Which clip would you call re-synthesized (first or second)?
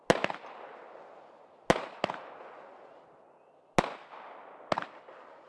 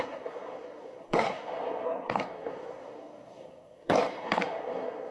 second